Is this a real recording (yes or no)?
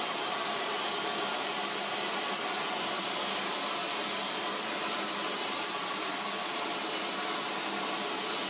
yes